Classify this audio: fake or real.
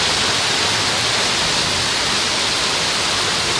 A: real